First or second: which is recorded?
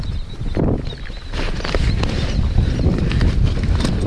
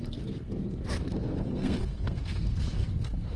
first